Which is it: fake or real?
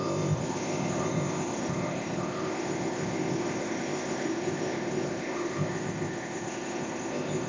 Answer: fake